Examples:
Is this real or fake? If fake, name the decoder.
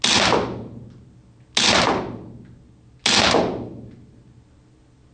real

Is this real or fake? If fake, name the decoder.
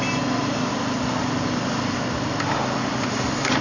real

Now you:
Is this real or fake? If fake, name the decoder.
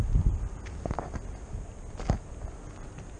real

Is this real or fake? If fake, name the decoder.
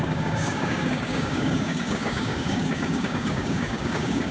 fake, codec, DAC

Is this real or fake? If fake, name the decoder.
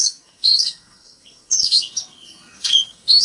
fake, codec, SNAC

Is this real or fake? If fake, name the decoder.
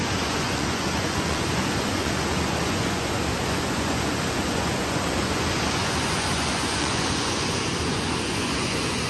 fake, vocoder, Vocos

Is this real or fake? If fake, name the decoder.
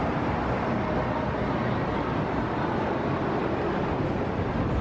real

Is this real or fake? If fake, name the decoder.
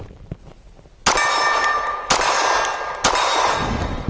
real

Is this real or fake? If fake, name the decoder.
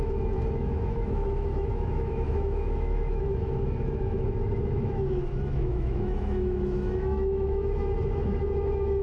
fake, autoencoder, DAC-VAE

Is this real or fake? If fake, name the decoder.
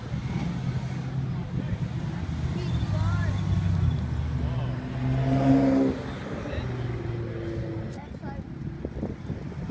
real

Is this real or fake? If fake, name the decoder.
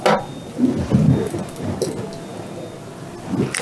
real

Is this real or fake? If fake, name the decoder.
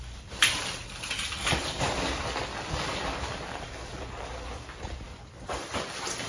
fake, vocoder, BigVGAN v2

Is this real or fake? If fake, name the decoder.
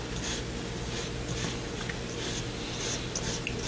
real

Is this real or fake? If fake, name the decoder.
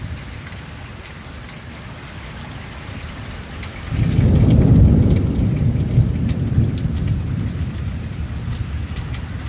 real